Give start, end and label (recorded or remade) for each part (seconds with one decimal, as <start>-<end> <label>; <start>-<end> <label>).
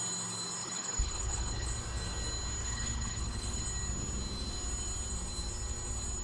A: 0.0-0.6 recorded; 0.6-1.7 remade; 1.7-2.6 recorded; 2.6-3.6 remade; 3.6-6.2 recorded